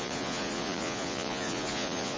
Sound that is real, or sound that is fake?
fake